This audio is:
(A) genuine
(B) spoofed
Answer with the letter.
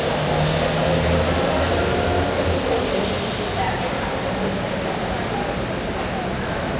A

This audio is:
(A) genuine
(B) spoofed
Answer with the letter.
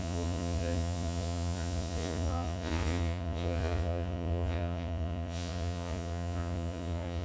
B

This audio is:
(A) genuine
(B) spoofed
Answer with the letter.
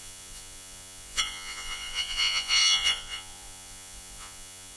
B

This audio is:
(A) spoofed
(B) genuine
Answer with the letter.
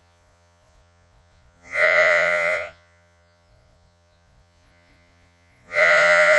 A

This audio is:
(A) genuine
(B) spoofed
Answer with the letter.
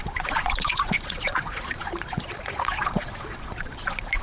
B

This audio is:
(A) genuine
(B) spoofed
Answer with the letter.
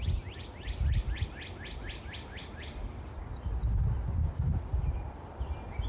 A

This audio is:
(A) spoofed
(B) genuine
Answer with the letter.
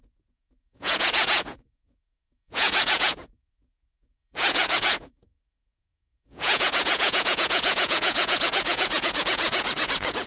A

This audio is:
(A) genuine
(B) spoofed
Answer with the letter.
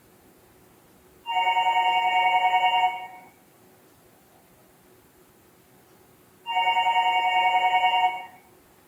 A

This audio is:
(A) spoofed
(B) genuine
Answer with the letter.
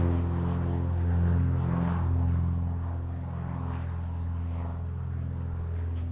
B